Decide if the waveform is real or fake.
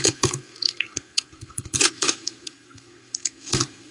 fake